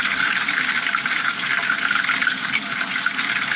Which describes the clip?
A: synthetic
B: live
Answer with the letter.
B